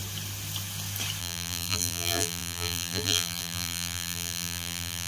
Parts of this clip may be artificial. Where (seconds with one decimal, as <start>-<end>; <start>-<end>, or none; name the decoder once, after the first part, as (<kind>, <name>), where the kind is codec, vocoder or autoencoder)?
1.2-5.1 (vocoder, BigVGAN v2)